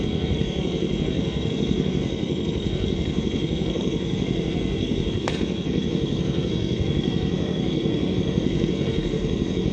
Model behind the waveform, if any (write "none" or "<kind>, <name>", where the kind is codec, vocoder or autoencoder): codec, SNAC